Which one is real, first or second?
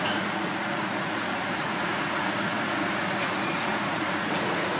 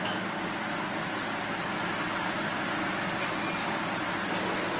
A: second